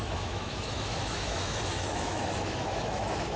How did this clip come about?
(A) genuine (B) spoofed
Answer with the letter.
B